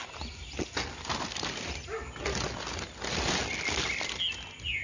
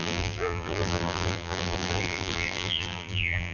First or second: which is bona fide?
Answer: first